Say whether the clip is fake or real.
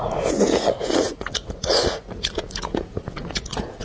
fake